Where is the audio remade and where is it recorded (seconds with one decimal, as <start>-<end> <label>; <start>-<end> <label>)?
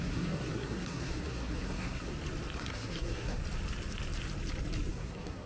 0.0-2.1 remade; 2.1-2.6 recorded; 2.6-3.4 remade; 3.4-4.9 recorded; 4.9-5.5 remade